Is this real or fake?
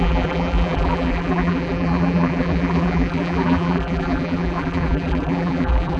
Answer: fake